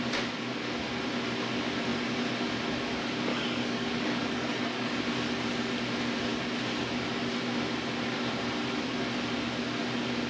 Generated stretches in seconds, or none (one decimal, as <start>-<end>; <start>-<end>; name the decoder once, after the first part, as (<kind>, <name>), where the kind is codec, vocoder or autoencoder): 3.3-5.0 (codec, DAC)